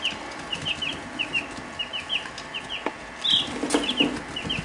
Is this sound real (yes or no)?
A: yes